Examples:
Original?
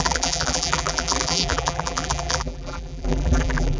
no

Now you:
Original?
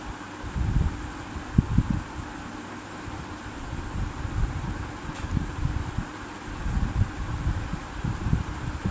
yes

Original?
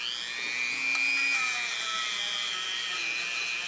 yes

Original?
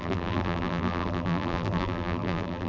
no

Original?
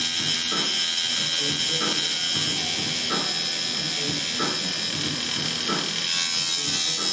yes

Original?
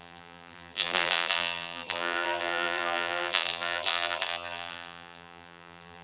no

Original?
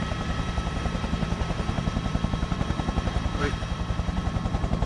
no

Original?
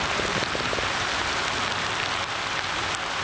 no